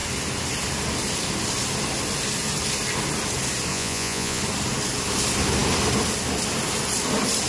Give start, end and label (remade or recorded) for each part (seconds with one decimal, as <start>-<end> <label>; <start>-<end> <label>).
0.0-3.7 recorded; 3.7-4.4 remade; 4.4-7.5 recorded